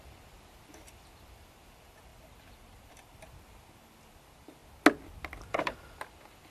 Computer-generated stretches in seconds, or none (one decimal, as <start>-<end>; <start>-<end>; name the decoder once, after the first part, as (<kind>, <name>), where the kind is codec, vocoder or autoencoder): 0.0-4.6 (vocoder, BigVGAN v2); 5.5-6.5